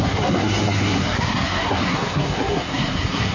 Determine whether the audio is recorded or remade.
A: remade